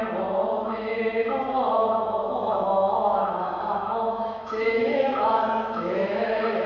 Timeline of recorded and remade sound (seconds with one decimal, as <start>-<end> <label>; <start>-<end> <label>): 0.0-0.6 recorded; 0.6-6.7 remade

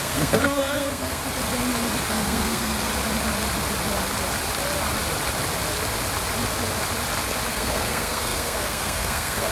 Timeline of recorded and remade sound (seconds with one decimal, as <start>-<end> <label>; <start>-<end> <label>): 0.0-1.2 remade; 1.2-2.1 recorded; 2.1-2.9 remade; 2.9-7.5 recorded; 7.5-9.5 remade

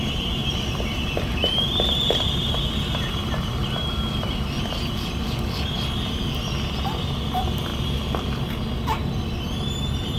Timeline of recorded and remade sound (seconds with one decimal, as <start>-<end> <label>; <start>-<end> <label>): 0.0-10.2 recorded

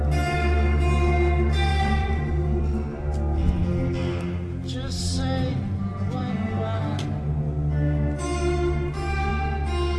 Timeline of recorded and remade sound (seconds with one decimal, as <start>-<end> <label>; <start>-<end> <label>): 0.0-1.7 recorded; 1.7-2.6 remade; 2.6-5.5 recorded; 5.5-6.2 remade; 6.2-10.0 recorded

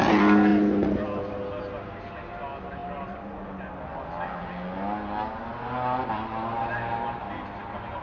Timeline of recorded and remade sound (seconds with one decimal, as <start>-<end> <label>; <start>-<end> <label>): 0.0-8.0 recorded

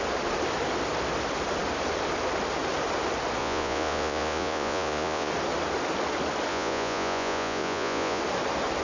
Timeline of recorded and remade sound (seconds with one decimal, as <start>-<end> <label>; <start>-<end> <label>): 0.0-3.4 recorded; 3.4-5.3 remade; 5.3-6.5 recorded; 6.5-8.2 remade; 8.2-8.8 recorded